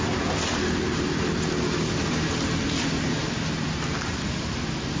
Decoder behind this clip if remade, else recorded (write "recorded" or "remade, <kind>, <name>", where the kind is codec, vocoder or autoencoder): recorded